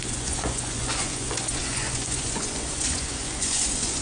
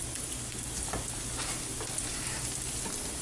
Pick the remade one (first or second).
first